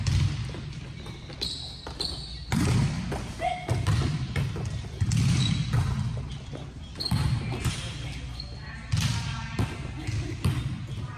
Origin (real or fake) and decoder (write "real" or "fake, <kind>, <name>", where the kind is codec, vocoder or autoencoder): real